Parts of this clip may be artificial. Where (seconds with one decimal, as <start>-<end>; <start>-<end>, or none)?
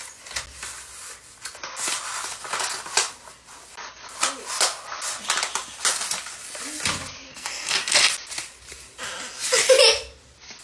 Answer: 7.3-8.1